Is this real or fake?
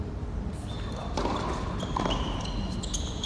real